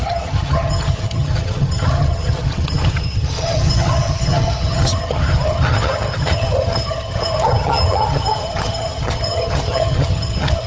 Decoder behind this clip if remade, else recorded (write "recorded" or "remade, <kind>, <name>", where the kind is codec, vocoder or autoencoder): remade, vocoder, HiFi-GAN